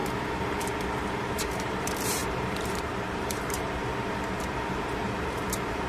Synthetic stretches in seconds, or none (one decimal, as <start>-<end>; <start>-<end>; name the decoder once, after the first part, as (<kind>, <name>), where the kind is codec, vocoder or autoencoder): 1.0-5.9 (vocoder, BigVGAN v2)